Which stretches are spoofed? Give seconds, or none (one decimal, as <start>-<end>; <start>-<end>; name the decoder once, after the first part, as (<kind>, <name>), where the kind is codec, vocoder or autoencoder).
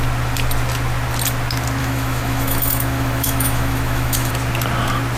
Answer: 1.8-4.3 (autoencoder, DAC-VAE)